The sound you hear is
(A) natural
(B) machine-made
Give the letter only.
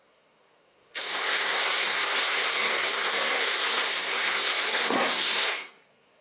B